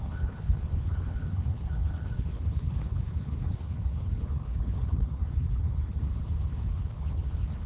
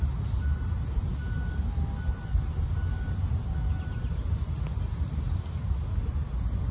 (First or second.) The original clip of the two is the second